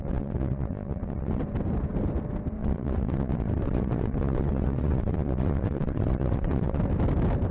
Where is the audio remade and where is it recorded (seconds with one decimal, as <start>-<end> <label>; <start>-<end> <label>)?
0.0-1.4 remade; 1.4-2.6 recorded; 2.6-6.8 remade; 6.8-7.5 recorded